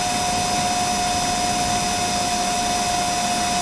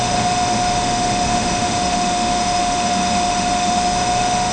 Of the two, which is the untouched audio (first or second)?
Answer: first